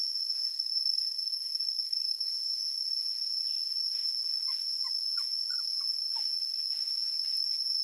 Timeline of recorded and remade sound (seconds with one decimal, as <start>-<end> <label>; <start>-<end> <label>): 0.0-0.5 recorded; 0.5-2.3 remade; 2.3-7.8 recorded